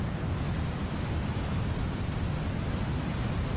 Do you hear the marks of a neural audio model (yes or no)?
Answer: no